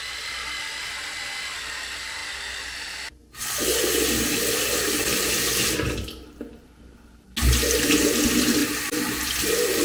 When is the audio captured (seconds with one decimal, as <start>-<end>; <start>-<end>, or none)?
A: 0.0-9.8